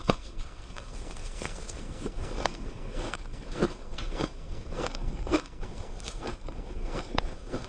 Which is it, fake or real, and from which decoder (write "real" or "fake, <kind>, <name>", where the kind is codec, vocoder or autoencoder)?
fake, codec, SNAC